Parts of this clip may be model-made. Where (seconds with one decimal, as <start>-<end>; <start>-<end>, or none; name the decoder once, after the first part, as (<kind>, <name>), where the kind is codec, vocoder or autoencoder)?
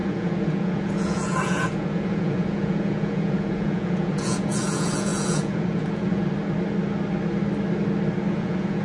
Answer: 0.0-6.2 (vocoder, Vocos); 8.3-8.8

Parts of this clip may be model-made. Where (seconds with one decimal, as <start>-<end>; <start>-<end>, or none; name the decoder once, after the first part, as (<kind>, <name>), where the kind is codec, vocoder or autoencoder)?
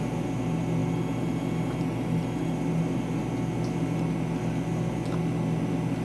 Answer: none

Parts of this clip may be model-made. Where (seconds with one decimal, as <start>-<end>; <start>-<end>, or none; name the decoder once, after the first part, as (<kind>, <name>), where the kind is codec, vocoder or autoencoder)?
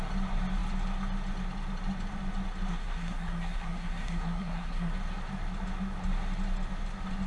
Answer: 2.7-4.9 (codec, SNAC)